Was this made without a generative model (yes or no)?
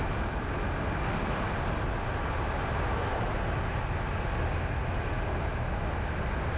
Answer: yes